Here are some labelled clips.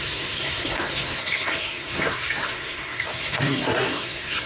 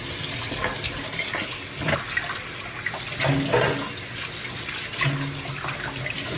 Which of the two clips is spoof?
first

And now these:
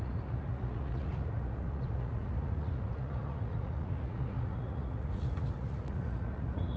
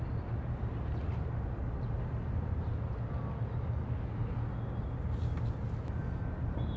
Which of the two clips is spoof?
first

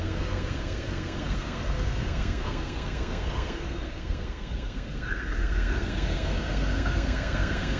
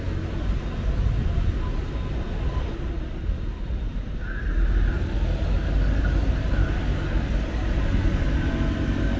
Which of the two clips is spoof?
first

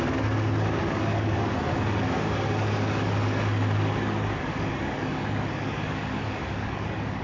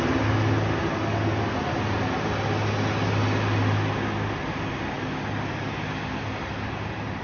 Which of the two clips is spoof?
first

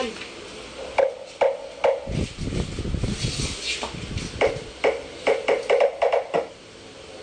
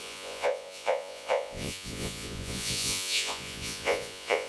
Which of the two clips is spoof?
second